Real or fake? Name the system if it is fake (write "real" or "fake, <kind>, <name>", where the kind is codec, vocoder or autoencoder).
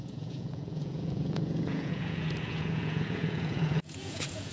fake, vocoder, Vocos